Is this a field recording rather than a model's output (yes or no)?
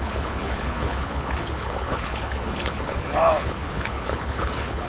no